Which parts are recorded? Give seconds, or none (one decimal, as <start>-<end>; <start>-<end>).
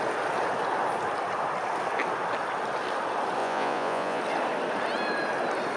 0.0-3.4; 4.2-5.8